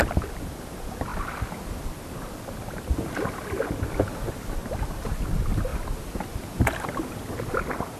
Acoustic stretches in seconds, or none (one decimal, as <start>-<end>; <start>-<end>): 0.0-8.0